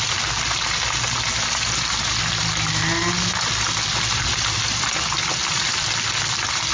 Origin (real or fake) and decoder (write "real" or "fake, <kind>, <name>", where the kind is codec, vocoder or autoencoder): real